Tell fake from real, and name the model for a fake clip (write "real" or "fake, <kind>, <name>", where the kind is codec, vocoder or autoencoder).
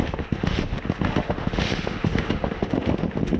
fake, autoencoder, DAC-VAE